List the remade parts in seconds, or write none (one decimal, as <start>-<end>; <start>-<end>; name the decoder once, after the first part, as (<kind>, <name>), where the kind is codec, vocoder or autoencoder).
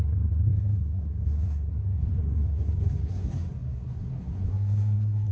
0.0-5.3 (codec, SNAC)